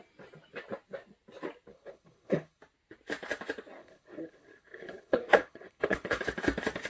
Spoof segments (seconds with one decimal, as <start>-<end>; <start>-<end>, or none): 1.7-2.6; 3.8-6.2